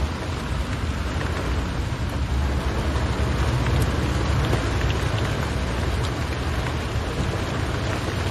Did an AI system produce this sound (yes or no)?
no